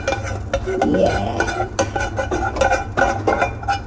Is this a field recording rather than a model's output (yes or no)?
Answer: yes